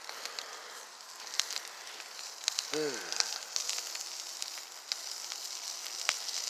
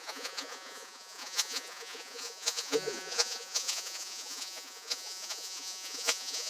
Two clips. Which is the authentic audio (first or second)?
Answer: first